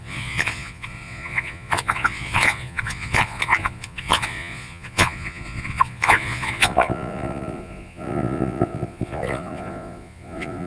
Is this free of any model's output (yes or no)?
no